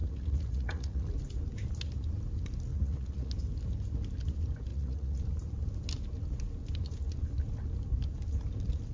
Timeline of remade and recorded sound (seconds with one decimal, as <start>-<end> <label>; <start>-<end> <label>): 0.0-1.1 remade; 1.1-2.7 recorded; 2.7-3.3 remade; 3.3-4.7 recorded; 4.7-5.2 remade; 5.2-8.9 recorded